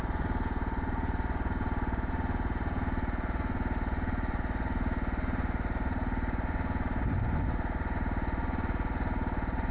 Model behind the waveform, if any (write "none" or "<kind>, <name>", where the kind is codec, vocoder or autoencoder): vocoder, Vocos